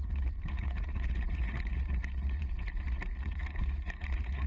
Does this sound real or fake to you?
fake